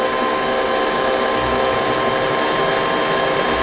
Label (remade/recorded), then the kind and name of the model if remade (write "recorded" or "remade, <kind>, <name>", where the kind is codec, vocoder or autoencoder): recorded